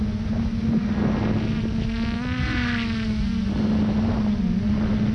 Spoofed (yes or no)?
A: no